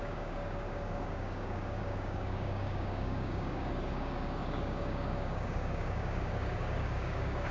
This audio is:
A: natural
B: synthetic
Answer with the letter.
B